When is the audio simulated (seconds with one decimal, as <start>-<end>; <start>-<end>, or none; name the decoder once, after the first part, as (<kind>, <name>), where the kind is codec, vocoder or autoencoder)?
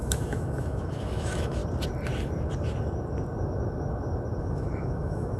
0.0-1.6 (autoencoder, DAC-VAE); 4.4-5.4